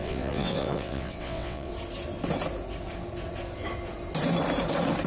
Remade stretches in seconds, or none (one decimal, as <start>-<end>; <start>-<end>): 0.0-1.7